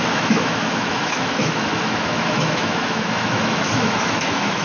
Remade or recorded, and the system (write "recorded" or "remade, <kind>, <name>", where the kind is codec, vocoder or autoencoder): remade, autoencoder, DAC-VAE